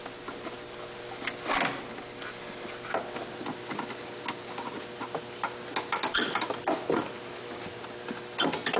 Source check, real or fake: real